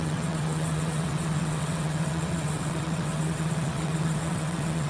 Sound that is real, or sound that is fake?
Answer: fake